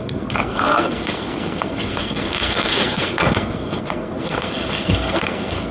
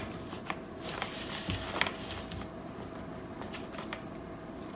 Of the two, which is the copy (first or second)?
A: first